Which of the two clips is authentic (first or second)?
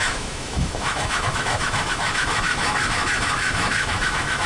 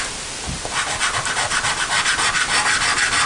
second